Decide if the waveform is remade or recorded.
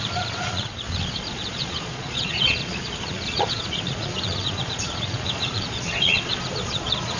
remade